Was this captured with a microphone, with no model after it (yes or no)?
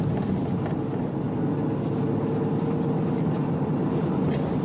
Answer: yes